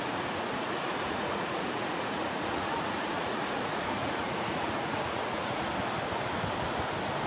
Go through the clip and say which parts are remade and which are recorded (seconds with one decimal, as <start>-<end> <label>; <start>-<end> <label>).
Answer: 0.0-5.7 remade; 5.7-7.3 recorded